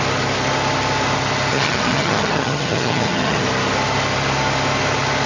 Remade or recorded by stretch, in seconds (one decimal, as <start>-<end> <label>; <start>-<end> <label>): 0.0-1.5 recorded; 1.5-3.4 remade; 3.4-5.3 recorded